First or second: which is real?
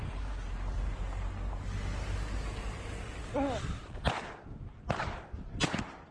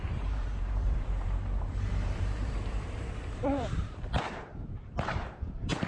first